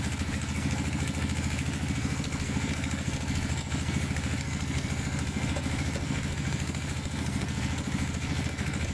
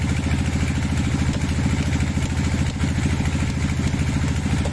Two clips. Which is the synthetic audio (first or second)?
first